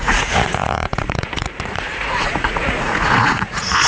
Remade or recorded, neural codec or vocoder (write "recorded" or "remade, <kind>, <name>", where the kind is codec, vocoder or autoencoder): remade, vocoder, Vocos